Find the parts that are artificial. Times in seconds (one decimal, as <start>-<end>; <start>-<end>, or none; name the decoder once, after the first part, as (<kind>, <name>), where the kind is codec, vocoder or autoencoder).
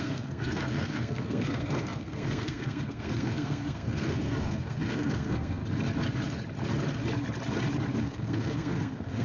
0.0-5.6 (codec, SNAC); 8.0-9.2